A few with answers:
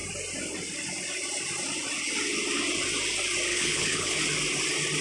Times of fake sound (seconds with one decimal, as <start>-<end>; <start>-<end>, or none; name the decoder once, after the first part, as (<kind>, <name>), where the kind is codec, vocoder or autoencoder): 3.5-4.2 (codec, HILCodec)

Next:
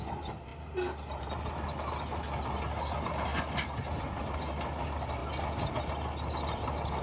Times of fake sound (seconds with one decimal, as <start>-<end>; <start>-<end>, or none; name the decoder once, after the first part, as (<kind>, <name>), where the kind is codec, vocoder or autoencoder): none

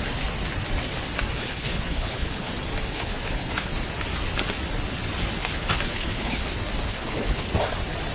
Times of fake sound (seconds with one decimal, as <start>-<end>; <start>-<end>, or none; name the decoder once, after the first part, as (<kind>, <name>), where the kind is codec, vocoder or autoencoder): 1.4-2.5 (codec, HILCodec); 2.9-3.7; 5.4-6.4; 6.9-7.5